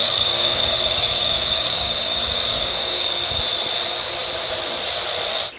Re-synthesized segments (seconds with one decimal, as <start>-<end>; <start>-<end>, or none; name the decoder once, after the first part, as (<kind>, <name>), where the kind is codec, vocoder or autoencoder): 0.0-3.4 (codec, DAC)